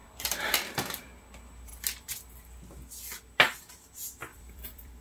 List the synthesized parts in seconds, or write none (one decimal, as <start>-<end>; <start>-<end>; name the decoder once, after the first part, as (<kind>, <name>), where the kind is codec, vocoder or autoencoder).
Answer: 0.0-0.5 (vocoder, BigVGAN v2); 4.3-5.0